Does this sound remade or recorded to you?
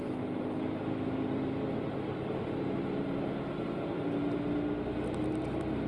recorded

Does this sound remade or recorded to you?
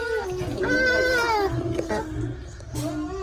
recorded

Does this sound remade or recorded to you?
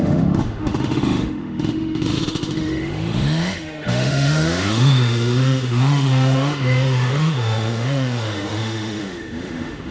remade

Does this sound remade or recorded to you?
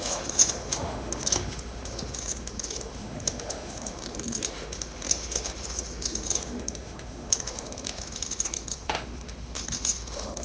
remade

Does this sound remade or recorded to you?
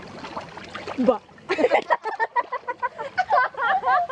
recorded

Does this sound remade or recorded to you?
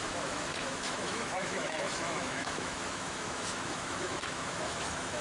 remade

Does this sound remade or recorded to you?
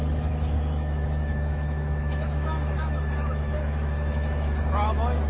remade